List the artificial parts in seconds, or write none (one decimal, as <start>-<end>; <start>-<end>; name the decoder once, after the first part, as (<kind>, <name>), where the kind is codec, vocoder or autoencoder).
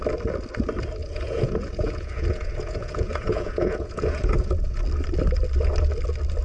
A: 1.0-4.8 (vocoder, Vocos)